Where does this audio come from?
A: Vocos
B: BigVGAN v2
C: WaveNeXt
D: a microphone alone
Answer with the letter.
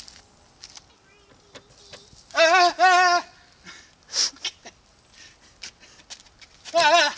D